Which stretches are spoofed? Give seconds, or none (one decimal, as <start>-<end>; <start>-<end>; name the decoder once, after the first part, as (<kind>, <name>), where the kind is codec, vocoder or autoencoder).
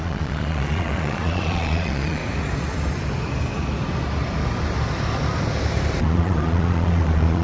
0.0-2.2 (vocoder, Vocos); 6.0-7.4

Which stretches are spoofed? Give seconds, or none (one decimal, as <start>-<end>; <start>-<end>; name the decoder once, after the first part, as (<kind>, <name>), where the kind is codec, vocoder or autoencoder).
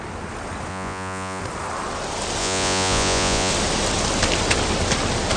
0.7-1.4 (vocoder, Vocos); 2.4-3.5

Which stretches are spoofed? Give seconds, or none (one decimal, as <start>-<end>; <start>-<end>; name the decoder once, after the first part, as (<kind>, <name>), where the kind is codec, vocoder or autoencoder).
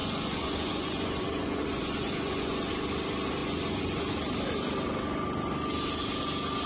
0.0-2.7 (vocoder, Vocos); 3.4-4.0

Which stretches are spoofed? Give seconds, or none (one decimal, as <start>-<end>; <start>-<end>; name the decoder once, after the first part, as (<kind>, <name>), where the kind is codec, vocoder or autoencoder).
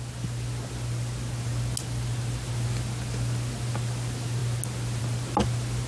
none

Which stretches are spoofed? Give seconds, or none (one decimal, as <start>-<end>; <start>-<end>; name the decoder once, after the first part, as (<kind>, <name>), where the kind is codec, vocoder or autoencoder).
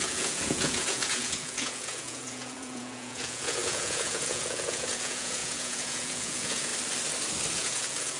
0.0-6.7 (vocoder, Vocos); 7.5-8.2